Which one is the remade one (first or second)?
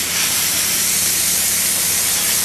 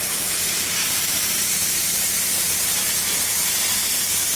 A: second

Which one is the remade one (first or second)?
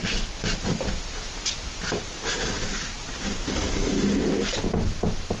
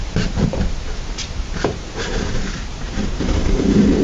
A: second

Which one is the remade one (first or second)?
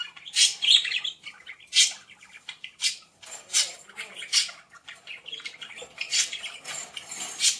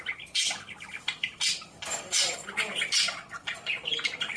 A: first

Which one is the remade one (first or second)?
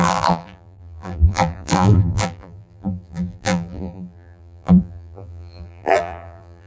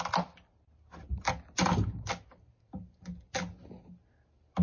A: first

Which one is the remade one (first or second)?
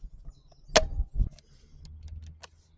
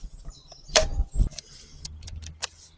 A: second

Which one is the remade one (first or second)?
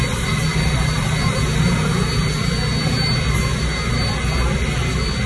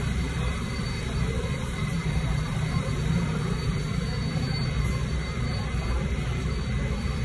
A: second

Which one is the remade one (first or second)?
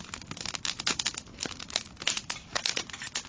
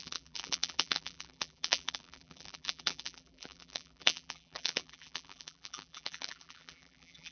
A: second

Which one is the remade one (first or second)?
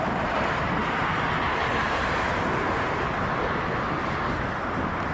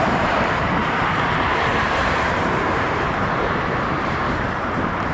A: second